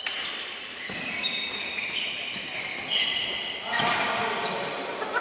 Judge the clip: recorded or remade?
recorded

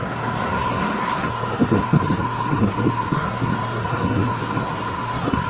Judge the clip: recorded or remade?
remade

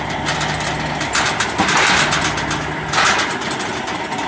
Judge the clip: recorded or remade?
recorded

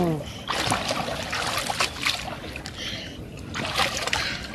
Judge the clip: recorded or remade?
recorded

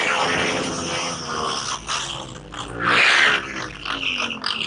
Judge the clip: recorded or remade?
recorded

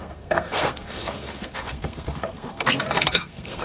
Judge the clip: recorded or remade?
remade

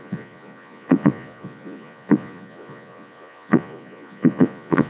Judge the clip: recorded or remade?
remade